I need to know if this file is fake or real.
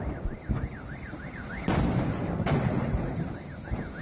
real